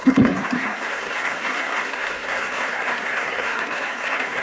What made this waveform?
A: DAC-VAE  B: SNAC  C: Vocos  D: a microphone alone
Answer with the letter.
B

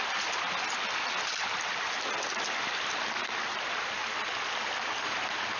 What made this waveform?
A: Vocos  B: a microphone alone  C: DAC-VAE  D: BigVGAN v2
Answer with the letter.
B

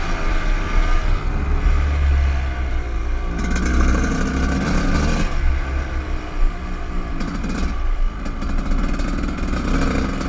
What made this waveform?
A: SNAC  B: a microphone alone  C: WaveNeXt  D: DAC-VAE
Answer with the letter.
B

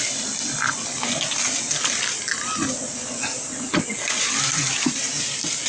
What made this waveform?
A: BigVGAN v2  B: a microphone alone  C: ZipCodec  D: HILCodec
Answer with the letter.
B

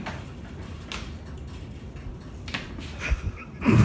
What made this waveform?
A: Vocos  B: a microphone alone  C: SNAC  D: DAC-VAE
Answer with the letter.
B